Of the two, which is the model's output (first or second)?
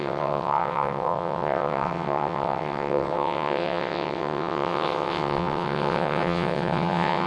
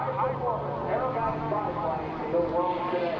first